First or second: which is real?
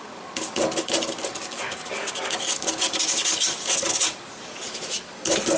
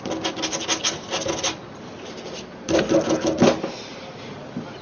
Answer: second